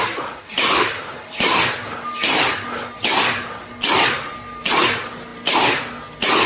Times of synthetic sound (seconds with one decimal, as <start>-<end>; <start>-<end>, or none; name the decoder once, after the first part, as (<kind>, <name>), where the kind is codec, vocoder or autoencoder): none